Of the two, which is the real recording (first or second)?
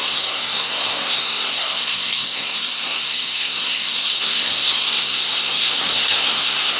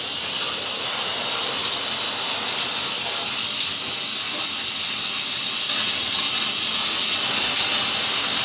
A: second